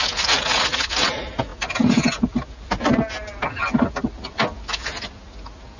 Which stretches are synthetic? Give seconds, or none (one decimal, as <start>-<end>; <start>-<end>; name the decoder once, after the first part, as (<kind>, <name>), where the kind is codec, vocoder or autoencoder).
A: none